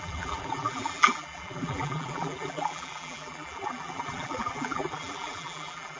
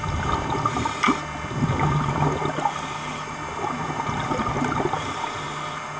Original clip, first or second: second